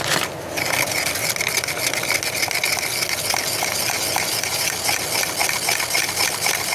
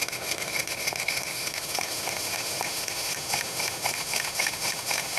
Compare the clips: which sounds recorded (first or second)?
first